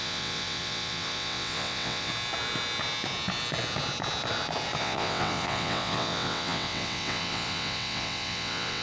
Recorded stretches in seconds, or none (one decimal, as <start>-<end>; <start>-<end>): 2.1-4.8